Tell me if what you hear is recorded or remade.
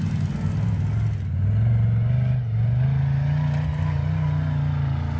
recorded